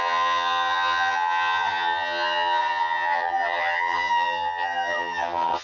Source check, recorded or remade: remade